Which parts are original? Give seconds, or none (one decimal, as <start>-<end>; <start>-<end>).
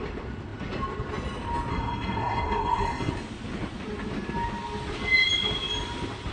0.0-1.7; 3.1-6.3